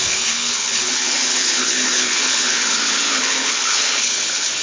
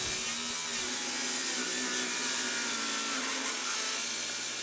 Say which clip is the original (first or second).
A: second